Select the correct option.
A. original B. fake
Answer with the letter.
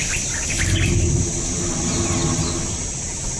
A